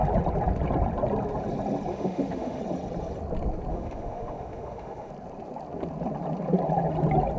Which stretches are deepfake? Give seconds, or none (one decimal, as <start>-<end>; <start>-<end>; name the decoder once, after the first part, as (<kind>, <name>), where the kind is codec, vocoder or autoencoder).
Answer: 1.9-2.6 (autoencoder, DAC-VAE); 3.7-5.1